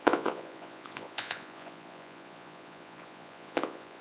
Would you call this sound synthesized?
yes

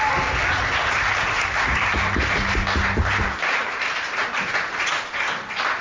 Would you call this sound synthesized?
no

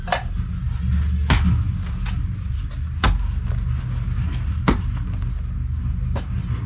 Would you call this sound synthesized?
no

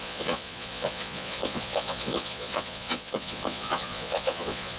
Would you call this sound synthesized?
yes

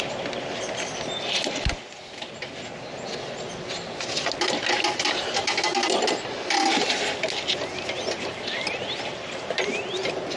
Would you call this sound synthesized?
no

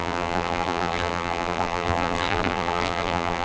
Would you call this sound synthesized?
yes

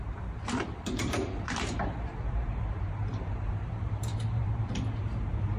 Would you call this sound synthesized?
yes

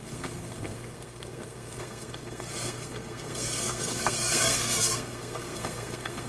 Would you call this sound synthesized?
yes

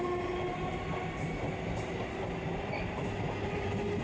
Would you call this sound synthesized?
no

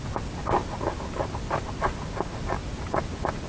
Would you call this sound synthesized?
no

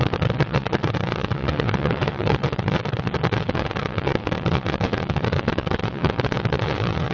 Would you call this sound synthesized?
yes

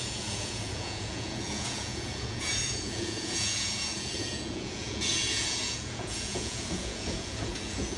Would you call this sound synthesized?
yes